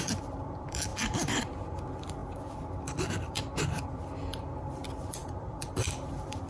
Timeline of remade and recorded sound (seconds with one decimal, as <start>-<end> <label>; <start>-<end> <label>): 0.0-6.5 remade